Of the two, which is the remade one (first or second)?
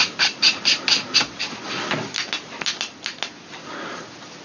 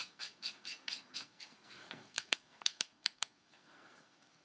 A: second